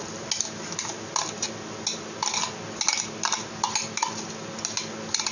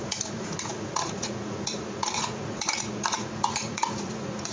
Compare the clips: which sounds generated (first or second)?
second